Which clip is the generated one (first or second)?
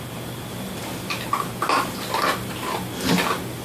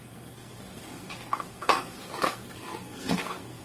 second